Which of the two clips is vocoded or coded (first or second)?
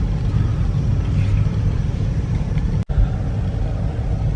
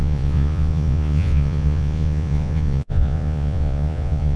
second